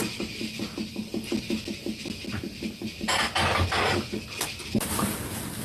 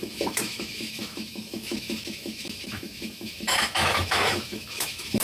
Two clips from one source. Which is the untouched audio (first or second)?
first